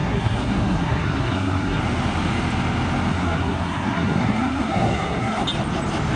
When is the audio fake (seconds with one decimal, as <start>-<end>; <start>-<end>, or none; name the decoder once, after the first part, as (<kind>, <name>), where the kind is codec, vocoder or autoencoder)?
0.0-1.8 (codec, SNAC); 3.1-5.4